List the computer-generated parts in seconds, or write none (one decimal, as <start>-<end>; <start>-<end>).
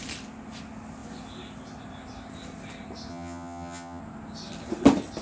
3.1-4.0